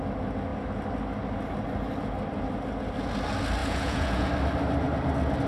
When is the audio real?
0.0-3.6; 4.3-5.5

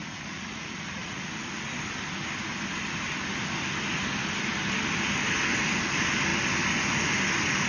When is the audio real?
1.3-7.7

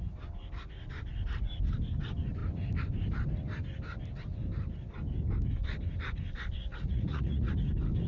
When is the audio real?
0.0-6.7; 7.5-8.1

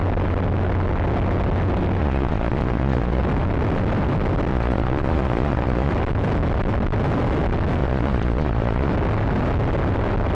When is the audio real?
0.0-2.0; 3.2-4.5; 5.9-7.8; 8.9-10.3